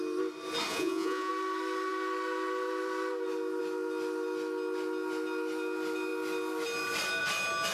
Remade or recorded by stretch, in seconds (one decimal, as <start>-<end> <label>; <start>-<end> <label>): 0.0-0.7 recorded; 0.7-1.3 remade; 1.3-7.7 recorded

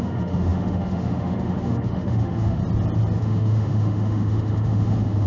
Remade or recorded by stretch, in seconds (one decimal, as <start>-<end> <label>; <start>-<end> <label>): 0.0-2.6 remade; 2.6-3.2 recorded; 3.2-5.3 remade

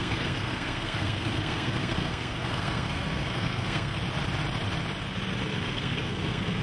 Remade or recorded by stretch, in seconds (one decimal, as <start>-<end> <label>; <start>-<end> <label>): 0.0-4.0 remade; 4.0-5.5 recorded; 5.5-6.6 remade